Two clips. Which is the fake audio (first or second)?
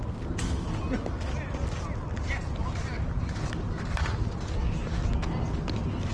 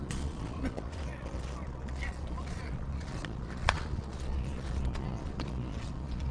second